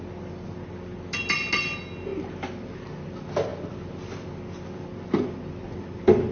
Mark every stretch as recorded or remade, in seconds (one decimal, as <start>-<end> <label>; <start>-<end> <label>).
0.0-6.3 recorded